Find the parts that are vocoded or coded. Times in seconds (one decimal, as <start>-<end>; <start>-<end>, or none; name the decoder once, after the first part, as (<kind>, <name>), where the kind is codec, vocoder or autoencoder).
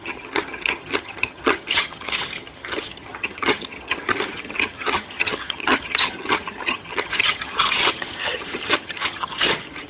0.0-9.9 (vocoder, HiFi-GAN)